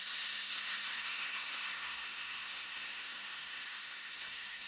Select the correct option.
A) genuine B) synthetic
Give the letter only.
B